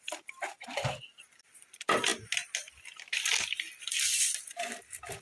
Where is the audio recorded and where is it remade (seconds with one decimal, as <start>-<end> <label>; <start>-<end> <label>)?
0.0-5.2 recorded